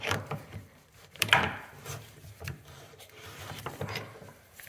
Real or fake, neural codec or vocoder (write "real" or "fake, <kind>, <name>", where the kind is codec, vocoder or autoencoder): fake, vocoder, BigVGAN v2